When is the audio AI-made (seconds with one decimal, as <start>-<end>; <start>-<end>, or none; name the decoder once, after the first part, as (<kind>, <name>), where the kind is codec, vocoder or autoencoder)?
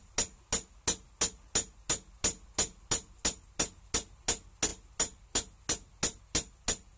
none